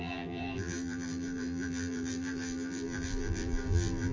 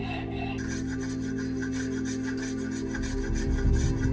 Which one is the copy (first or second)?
first